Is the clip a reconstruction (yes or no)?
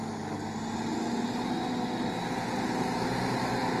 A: no